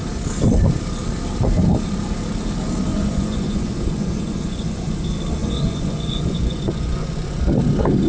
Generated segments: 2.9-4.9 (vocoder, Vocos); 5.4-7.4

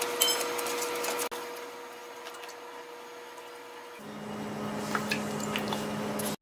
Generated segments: none